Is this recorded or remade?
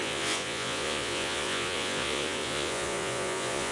remade